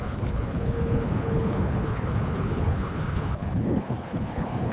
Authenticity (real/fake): fake